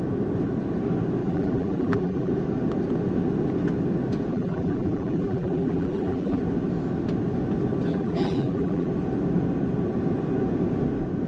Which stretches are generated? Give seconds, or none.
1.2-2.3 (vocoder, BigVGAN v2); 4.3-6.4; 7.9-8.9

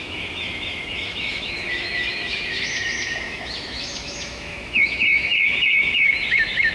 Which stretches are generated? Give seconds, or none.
0.0-6.7 (autoencoder, DAC-VAE)

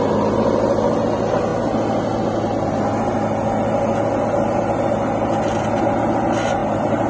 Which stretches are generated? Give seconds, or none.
6.6-7.1 (vocoder, BigVGAN v2)